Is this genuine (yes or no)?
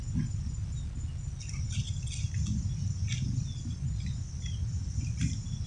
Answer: yes